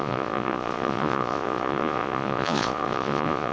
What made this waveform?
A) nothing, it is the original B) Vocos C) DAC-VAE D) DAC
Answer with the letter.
B